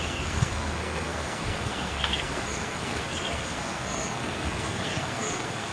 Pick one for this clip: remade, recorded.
remade